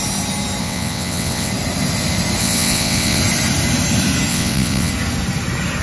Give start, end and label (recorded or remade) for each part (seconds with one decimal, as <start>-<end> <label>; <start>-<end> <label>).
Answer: 0.0-0.6 recorded; 0.6-1.5 remade; 1.5-2.4 recorded; 2.4-3.2 remade; 3.2-4.3 recorded; 4.3-4.9 remade; 4.9-5.8 recorded